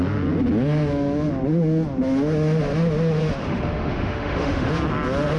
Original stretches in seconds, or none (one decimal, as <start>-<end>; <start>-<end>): 0.0-3.4; 4.7-5.4